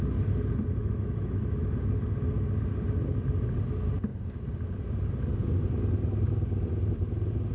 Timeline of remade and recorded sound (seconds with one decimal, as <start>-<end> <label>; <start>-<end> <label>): 0.0-0.8 recorded; 0.8-1.7 remade; 1.7-7.5 recorded

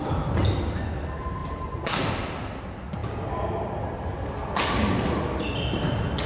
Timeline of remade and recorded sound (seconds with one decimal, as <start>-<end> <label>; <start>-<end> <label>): 0.0-1.4 recorded; 1.4-1.9 remade; 1.9-6.3 recorded